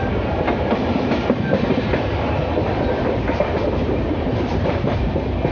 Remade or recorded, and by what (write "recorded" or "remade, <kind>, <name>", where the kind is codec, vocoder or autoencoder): remade, vocoder, BigVGAN v2